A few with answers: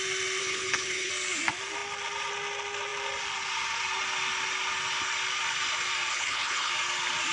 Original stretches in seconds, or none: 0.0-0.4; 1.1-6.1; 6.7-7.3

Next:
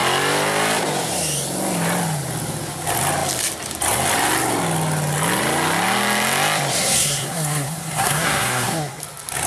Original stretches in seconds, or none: 0.0-6.8; 9.0-9.5

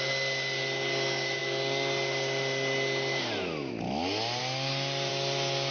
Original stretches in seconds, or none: 0.0-5.7

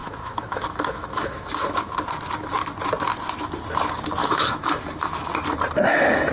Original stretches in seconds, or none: 1.9-4.2; 5.3-6.3

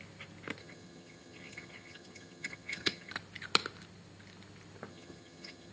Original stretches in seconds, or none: 0.0-0.6; 3.1-4.9